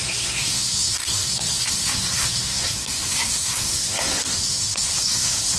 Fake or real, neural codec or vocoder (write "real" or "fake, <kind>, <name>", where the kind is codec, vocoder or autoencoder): fake, codec, SNAC